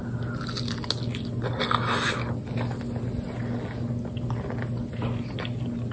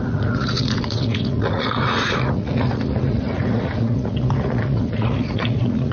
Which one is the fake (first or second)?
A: second